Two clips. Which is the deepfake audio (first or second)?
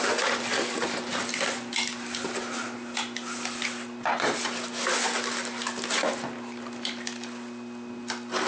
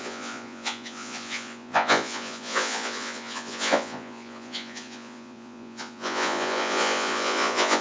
second